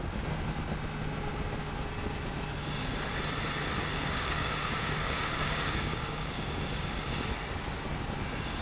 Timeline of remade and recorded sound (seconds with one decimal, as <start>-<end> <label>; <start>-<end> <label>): 0.0-3.9 recorded; 3.9-7.2 remade; 7.2-8.6 recorded